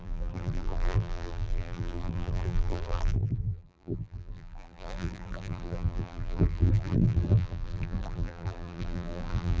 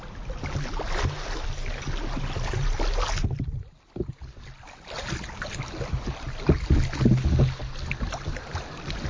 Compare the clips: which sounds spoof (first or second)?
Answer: first